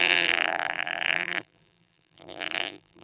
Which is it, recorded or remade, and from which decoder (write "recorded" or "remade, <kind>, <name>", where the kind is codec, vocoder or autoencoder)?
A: remade, vocoder, BigVGAN v2